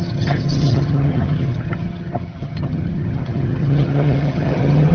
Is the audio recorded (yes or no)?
no